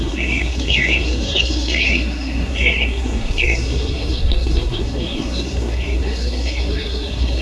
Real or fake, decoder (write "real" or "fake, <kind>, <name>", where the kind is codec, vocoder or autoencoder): fake, codec, SNAC